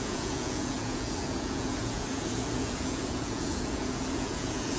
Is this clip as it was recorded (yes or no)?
no